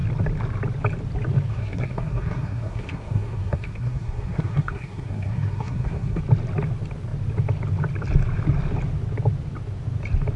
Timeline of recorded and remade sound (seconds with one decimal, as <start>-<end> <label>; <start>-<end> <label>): 0.0-1.5 recorded; 1.5-6.2 remade; 6.2-10.4 recorded